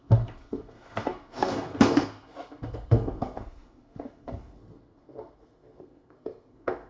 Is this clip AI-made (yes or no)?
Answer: yes